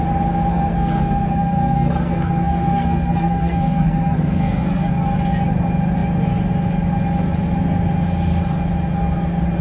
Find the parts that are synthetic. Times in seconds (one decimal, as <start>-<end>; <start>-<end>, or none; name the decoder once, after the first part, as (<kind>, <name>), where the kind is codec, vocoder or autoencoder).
0.5-4.9 (codec, SNAC)